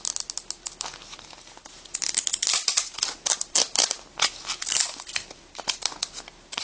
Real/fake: real